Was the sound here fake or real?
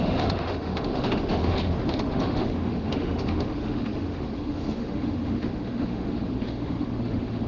fake